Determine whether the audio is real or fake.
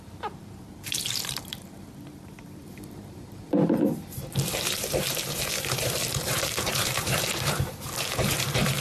fake